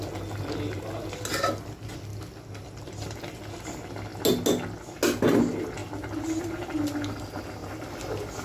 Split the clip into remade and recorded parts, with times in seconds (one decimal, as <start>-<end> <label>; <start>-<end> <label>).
0.0-8.4 recorded